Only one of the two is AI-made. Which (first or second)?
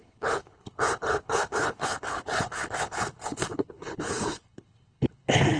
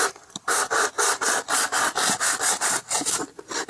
first